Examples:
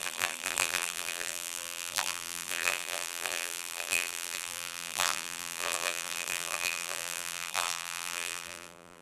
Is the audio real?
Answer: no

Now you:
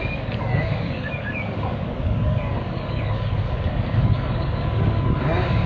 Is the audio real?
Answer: no